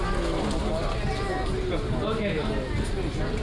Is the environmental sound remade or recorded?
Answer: recorded